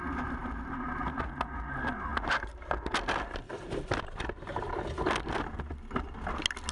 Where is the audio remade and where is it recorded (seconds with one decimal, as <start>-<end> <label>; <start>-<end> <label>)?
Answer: 0.0-6.7 recorded